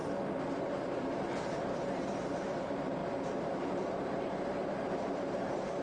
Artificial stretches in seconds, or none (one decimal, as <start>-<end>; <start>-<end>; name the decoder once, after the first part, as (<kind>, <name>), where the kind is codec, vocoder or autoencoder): 0.6-5.8 (vocoder, BigVGAN v2)